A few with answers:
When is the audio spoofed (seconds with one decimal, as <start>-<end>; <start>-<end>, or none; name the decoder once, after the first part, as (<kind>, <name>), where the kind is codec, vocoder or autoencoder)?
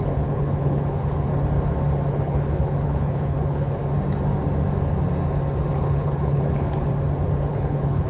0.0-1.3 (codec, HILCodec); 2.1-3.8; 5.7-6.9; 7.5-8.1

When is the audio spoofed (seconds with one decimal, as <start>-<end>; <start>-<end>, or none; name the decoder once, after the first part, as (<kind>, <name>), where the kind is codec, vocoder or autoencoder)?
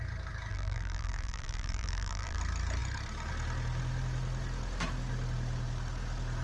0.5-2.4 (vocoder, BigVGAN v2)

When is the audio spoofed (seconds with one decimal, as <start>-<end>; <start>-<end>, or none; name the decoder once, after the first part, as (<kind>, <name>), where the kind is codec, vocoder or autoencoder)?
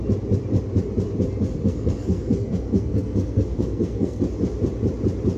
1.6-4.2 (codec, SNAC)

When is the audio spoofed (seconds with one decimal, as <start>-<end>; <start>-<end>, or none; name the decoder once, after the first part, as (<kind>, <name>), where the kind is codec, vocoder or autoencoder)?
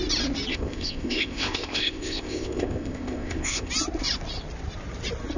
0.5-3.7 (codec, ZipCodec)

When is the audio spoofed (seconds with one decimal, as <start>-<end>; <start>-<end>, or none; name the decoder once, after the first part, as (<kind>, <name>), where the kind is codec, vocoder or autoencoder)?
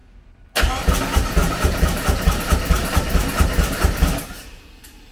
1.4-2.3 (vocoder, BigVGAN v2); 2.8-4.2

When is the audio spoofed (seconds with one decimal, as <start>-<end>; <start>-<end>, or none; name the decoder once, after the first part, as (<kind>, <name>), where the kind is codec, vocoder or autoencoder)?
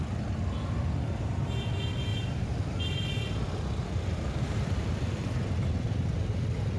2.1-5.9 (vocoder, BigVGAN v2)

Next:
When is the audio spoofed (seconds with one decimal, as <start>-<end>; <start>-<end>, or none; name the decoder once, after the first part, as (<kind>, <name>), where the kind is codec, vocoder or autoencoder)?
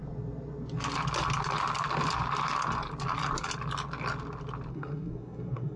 4.7-5.8 (codec, SNAC)